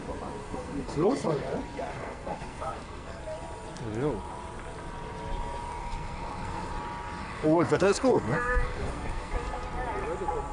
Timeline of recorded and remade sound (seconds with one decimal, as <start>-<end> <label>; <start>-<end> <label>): 0.0-0.4 recorded; 0.4-1.5 remade; 1.5-1.9 recorded; 1.9-3.2 remade; 3.2-5.8 recorded; 5.8-6.7 remade; 6.7-7.2 recorded; 7.2-9.3 remade; 9.3-10.5 recorded